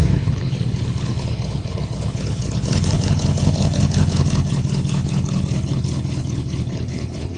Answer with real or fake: fake